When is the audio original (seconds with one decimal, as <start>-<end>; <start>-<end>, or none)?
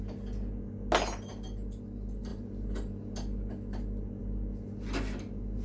0.0-5.6